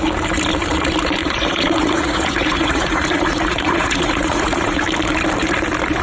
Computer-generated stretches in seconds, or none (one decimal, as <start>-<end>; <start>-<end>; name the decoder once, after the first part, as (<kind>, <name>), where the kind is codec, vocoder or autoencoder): 1.2-4.8 (vocoder, Vocos)